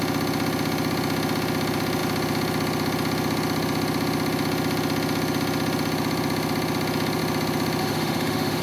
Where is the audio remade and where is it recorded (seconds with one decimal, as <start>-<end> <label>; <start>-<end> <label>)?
0.0-7.8 recorded; 7.8-8.6 remade